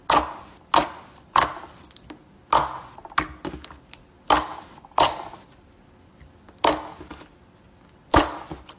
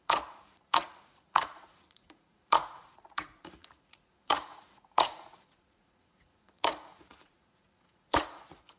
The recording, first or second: first